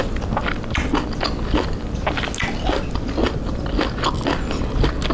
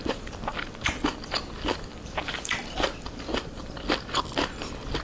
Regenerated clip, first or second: second